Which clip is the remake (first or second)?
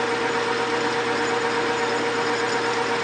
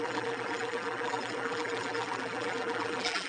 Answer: second